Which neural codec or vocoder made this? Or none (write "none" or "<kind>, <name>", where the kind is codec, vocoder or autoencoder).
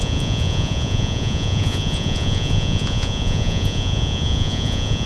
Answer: vocoder, Vocos